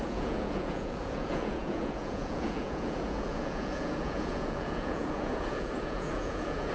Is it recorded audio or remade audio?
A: remade